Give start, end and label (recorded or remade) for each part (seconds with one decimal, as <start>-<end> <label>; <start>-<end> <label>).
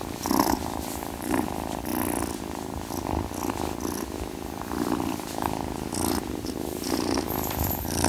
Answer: 0.0-0.5 recorded; 0.5-1.9 remade; 1.9-6.2 recorded; 6.2-8.1 remade